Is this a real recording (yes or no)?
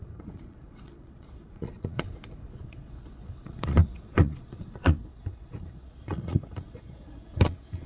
no